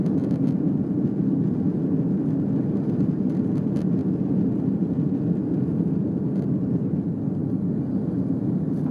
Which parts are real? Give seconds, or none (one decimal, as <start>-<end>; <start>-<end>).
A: 0.0-8.9